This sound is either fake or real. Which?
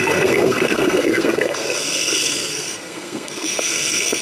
fake